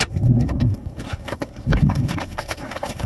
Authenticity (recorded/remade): remade